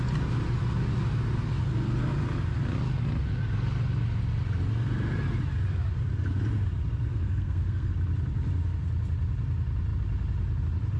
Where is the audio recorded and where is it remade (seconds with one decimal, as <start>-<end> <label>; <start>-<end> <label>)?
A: 0.0-7.1 recorded; 7.1-7.9 remade; 7.9-11.0 recorded